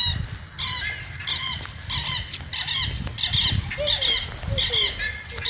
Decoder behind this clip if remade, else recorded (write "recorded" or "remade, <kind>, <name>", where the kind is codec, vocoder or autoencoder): recorded